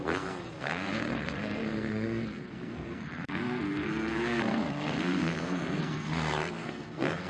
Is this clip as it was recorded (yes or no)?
no